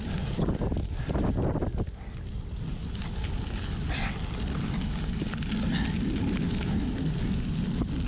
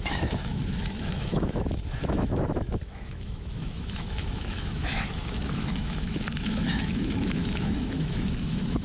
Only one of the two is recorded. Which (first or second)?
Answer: first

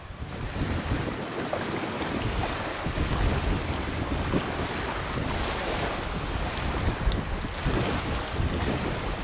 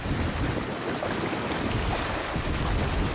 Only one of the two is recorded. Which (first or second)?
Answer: second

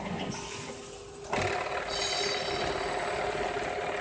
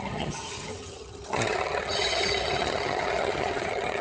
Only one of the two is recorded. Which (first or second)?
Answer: first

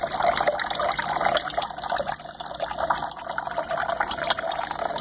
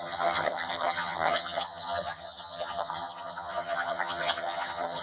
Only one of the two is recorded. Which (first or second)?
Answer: first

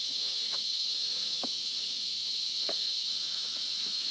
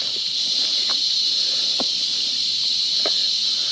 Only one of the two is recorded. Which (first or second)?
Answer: second